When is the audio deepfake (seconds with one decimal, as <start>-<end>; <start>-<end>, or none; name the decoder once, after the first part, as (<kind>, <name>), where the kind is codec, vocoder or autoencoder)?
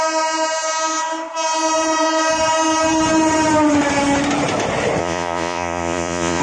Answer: 5.0-6.4 (vocoder, Vocos)